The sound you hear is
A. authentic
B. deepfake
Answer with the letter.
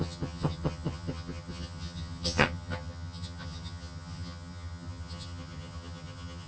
B